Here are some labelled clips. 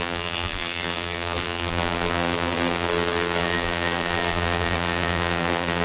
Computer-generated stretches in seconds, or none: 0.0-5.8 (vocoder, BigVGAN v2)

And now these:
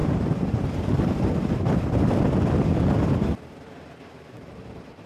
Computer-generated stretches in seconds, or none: 0.0-1.3 (vocoder, BigVGAN v2)